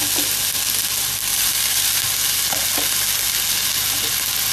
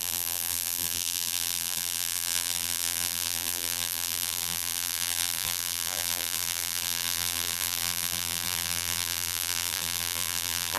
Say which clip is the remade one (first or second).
second